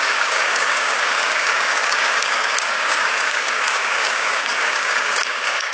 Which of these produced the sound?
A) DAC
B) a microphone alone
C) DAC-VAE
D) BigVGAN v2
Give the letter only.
A